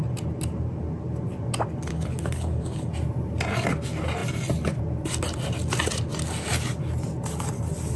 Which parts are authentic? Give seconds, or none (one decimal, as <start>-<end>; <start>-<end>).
0.0-1.9; 2.9-8.0